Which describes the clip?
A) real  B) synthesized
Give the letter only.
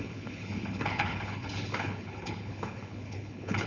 B